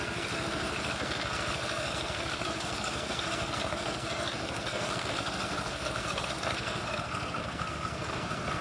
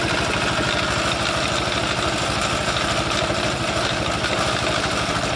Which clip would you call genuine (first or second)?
second